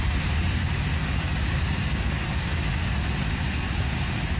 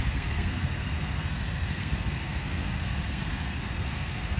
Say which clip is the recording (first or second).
first